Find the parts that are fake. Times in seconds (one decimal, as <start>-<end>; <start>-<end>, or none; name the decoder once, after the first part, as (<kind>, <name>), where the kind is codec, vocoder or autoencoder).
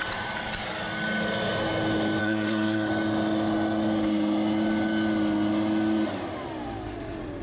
2.2-2.9 (codec, SNAC)